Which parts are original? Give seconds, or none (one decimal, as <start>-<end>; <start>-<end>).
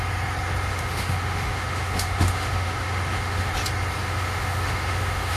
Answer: 0.0-0.7; 3.5-4.0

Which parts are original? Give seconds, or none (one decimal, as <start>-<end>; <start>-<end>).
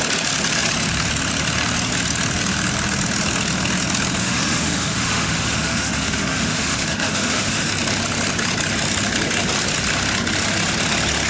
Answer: 0.0-4.2; 7.7-11.3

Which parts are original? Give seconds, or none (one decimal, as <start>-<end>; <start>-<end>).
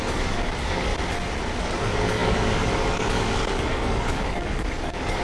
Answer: 0.9-1.6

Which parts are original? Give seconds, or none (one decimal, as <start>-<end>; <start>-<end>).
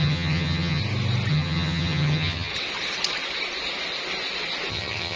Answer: 0.8-1.3; 2.5-4.7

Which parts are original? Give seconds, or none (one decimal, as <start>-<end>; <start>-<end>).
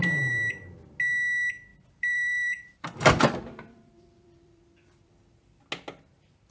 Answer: 0.6-1.7; 5.6-6.5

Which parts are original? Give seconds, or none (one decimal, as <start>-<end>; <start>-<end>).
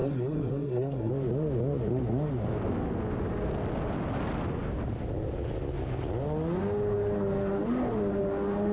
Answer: 1.1-8.7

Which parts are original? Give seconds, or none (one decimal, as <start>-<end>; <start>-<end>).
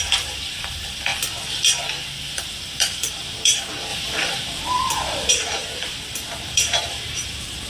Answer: 1.1-2.3